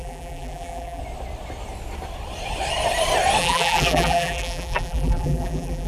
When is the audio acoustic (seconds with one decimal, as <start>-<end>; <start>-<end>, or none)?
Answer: 1.0-3.4